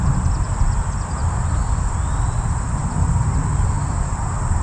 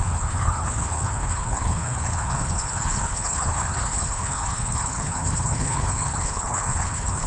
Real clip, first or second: first